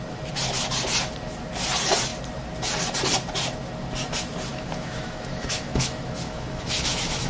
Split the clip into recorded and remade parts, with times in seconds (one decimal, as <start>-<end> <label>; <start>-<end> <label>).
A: 0.0-4.5 recorded; 4.5-7.3 remade